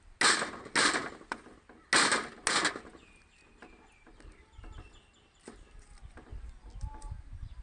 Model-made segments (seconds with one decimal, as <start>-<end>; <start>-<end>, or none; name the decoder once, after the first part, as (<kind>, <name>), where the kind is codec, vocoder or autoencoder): none

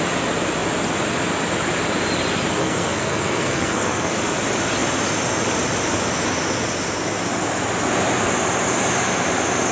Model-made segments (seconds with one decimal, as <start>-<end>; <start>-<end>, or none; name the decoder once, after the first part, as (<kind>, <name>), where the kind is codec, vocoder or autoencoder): 2.6-4.1 (codec, SNAC)

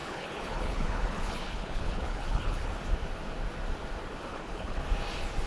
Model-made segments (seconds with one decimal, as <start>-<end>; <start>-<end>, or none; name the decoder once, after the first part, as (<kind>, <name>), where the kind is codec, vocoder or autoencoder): 0.0-2.7 (codec, HILCodec); 4.3-4.8

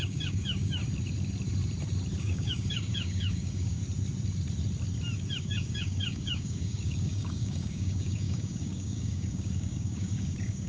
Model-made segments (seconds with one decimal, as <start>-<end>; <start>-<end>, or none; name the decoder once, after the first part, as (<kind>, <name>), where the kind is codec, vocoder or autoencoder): 0.0-0.8 (codec, DAC); 2.2-3.8; 5.4-10.7